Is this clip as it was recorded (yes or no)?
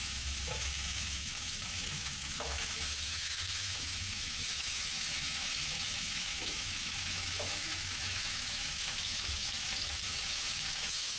no